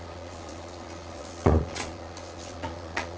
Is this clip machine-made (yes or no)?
yes